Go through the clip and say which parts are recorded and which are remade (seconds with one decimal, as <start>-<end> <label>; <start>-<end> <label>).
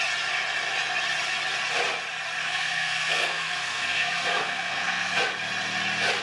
0.0-2.4 recorded; 2.4-5.2 remade; 5.2-6.2 recorded